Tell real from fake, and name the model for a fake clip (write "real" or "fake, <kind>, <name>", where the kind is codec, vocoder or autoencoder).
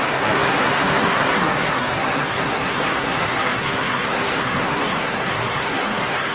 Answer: fake, codec, SNAC